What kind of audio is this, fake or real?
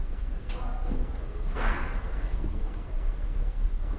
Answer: fake